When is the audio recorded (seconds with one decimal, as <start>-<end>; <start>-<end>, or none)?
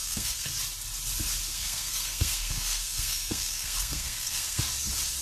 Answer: 0.5-1.5; 4.6-5.2